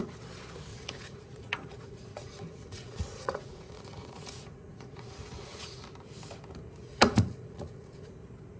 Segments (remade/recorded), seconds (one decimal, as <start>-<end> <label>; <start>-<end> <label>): 0.0-0.7 recorded; 0.7-5.8 remade; 5.8-6.8 recorded; 6.8-8.1 remade; 8.1-8.6 recorded